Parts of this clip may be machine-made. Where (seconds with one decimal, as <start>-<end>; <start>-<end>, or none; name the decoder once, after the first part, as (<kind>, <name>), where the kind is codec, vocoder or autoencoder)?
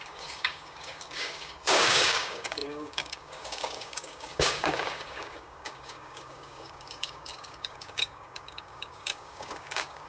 0.0-10.1 (codec, DAC)